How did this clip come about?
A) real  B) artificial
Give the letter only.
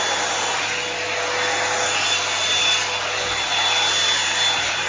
A